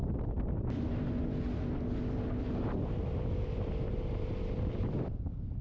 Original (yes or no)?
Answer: yes